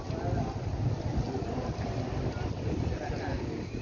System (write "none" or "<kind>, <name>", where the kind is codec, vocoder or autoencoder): none